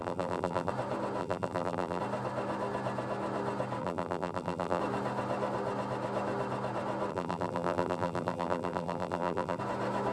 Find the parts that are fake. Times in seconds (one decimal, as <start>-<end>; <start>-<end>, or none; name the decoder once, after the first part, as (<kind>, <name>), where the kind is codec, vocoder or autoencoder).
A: 0.0-0.7 (vocoder, BigVGAN v2); 1.2-2.0; 3.8-4.8; 7.1-9.6